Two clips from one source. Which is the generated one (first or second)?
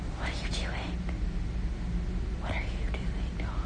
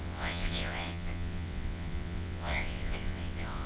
second